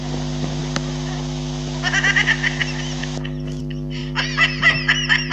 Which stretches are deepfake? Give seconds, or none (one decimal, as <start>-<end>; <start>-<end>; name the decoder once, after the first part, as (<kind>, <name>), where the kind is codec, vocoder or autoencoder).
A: none